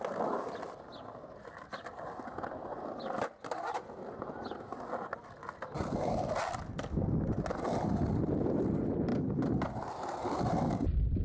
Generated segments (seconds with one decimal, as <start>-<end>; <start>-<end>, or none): none